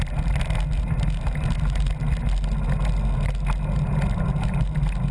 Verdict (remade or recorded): recorded